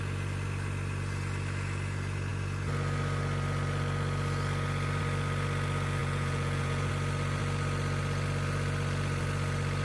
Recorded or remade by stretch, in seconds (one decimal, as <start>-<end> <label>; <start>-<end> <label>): 0.0-6.0 recorded; 6.0-6.9 remade; 6.9-9.8 recorded